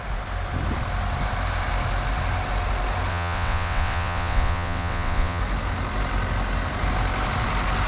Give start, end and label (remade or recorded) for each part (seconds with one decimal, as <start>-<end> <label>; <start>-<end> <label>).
0.0-3.1 recorded; 3.1-5.4 remade; 5.4-7.9 recorded